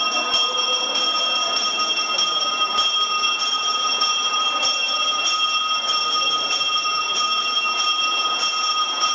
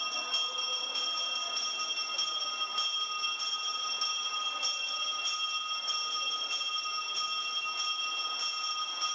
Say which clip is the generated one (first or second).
first